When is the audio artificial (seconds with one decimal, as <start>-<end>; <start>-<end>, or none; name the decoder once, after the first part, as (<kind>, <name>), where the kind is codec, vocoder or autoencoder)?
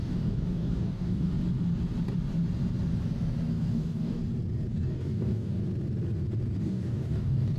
0.0-1.3 (codec, DAC); 3.5-4.2; 4.7-5.6; 6.6-7.6